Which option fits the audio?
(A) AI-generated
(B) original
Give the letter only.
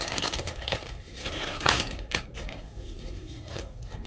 A